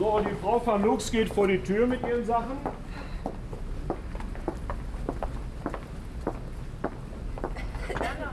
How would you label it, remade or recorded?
recorded